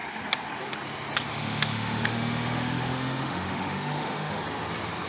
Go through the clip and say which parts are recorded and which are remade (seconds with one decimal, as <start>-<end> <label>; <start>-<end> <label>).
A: 0.0-1.3 recorded; 1.3-4.4 remade; 4.4-5.1 recorded